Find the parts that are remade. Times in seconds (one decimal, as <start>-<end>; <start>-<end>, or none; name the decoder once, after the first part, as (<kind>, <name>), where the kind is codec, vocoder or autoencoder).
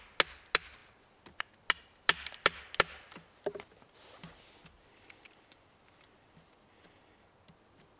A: none